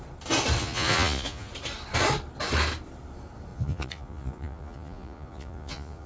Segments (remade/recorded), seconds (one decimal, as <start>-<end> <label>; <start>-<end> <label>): 0.0-0.6 recorded; 0.6-1.5 remade; 1.5-3.5 recorded; 3.5-6.1 remade